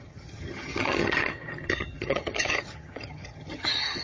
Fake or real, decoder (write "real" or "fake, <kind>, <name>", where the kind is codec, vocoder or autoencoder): fake, vocoder, HiFi-GAN